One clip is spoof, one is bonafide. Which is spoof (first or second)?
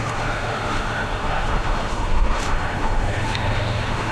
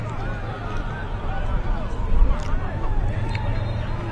first